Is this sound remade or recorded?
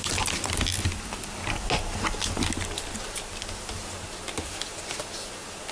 recorded